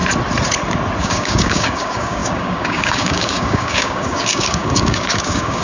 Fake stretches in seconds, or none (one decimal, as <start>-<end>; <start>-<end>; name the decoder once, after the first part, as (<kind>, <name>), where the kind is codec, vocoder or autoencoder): 1.0-5.6 (codec, DAC)